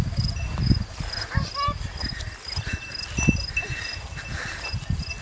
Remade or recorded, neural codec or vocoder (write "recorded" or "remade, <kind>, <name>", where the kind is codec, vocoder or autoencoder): recorded